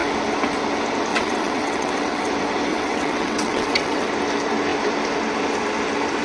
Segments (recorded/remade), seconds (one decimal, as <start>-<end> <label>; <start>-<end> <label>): 0.0-1.1 recorded; 1.1-2.3 remade; 2.3-2.7 recorded; 2.7-4.1 remade; 4.1-6.2 recorded